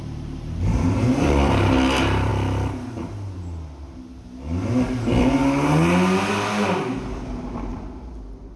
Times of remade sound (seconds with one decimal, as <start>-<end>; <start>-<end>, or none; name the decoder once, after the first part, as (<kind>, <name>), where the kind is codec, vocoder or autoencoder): 0.0-2.3 (vocoder, BigVGAN v2); 6.3-7.7